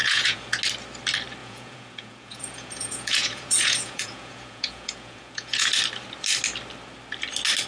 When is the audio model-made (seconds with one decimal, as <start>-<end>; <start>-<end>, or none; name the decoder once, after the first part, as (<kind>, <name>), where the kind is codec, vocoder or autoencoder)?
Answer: 0.0-0.6 (vocoder, Vocos); 1.4-5.7